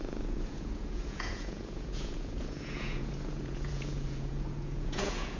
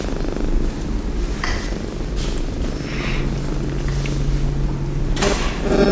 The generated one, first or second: first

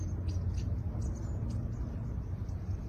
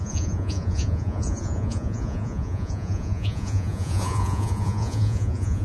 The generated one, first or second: second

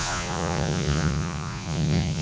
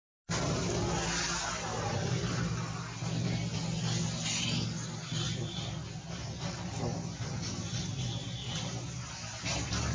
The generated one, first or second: first